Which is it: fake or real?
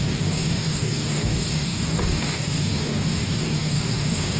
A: fake